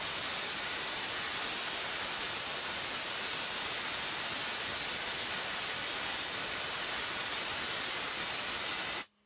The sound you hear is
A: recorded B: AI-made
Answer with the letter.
A